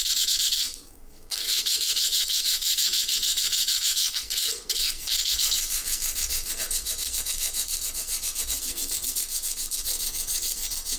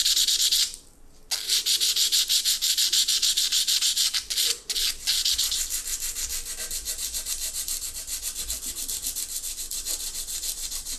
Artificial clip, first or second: first